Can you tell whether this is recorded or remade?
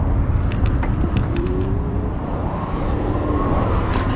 remade